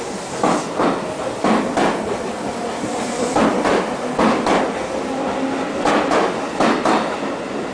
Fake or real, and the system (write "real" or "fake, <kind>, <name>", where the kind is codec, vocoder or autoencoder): real